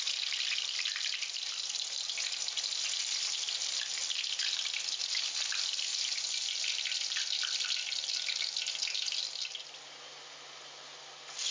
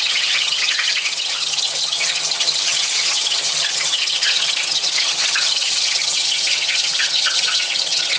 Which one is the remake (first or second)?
second